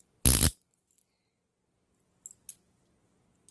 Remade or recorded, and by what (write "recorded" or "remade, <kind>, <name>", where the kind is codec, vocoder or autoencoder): recorded